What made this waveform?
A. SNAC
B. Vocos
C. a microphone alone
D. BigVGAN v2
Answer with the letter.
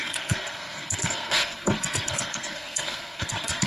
A